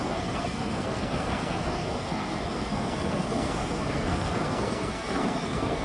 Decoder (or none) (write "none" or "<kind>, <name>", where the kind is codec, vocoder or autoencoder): codec, SNAC